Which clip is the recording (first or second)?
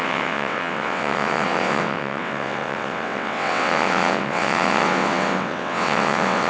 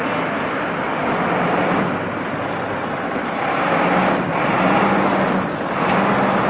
second